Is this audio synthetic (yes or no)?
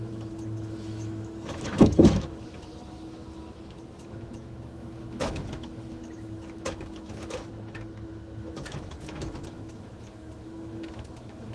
yes